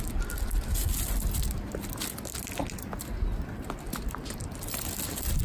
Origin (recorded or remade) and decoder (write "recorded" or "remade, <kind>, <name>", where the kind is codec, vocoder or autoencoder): recorded